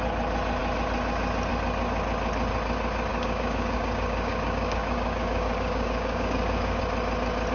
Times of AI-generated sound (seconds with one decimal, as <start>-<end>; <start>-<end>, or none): 3.1-6.8